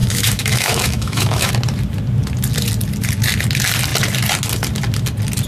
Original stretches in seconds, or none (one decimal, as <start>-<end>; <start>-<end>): 1.5-5.5